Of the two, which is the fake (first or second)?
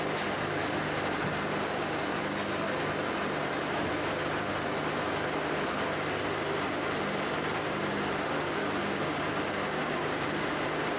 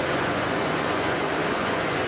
second